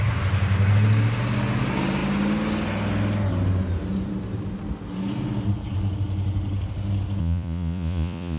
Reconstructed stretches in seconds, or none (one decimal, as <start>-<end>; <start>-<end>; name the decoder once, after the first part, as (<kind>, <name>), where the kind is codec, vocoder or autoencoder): 7.2-8.4 (vocoder, Vocos)